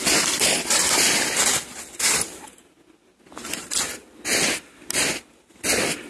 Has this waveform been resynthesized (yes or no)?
no